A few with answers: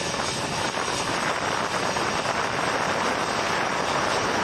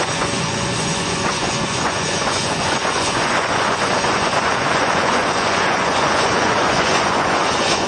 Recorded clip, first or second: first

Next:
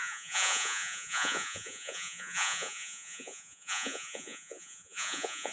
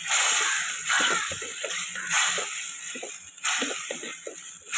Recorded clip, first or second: second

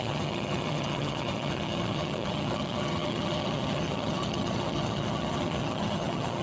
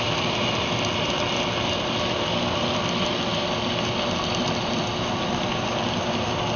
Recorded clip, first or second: second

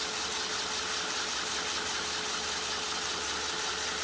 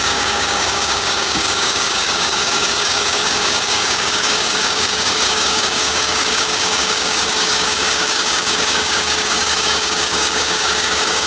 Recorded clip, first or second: first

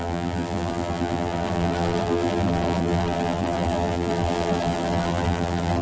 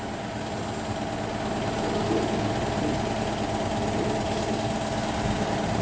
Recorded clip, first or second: second